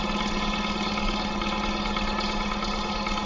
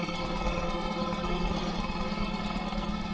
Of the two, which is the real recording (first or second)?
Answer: first